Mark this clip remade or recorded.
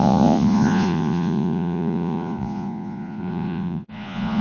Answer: remade